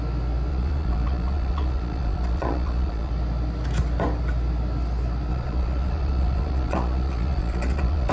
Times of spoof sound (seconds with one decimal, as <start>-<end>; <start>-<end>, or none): 0.5-3.1; 5.3-8.1